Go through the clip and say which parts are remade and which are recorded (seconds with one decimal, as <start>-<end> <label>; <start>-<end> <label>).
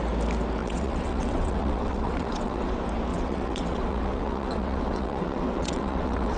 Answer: 0.0-0.6 recorded; 0.6-2.7 remade; 2.7-3.1 recorded; 3.1-6.4 remade